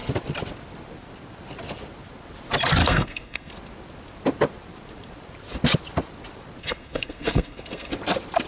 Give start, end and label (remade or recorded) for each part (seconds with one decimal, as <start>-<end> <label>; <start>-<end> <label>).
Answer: 0.0-2.8 recorded; 2.8-3.5 remade; 3.5-6.6 recorded; 6.6-7.9 remade; 7.9-8.5 recorded